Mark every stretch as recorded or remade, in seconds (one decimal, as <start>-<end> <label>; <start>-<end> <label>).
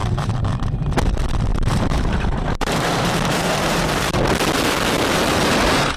0.0-0.8 remade; 0.8-1.5 recorded; 1.5-4.2 remade; 4.2-6.0 recorded